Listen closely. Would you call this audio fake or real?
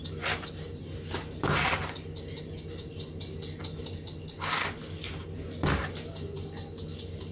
real